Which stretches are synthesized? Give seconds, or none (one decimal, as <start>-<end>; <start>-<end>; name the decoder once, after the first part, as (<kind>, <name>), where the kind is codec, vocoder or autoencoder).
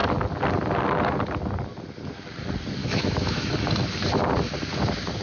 2.8-3.5 (autoencoder, DAC-VAE)